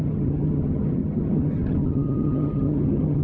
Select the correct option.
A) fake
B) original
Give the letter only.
A